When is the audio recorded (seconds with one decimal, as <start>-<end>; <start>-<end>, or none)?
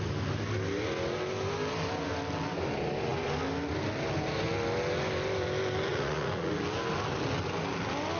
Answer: 0.0-5.9; 6.5-8.2